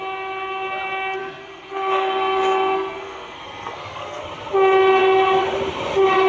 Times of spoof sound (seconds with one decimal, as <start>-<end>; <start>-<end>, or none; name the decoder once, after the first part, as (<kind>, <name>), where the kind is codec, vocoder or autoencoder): 1.2-4.2 (codec, SNAC)